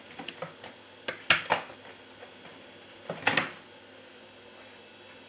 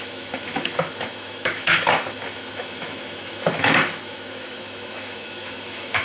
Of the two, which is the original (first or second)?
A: first